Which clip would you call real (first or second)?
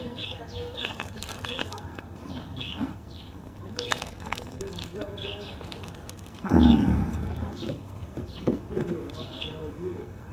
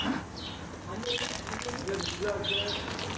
second